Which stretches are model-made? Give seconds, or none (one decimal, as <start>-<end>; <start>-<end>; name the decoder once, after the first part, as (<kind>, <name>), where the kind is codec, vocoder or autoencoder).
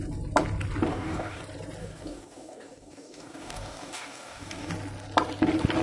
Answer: 0.9-1.4 (codec, DAC); 1.8-4.7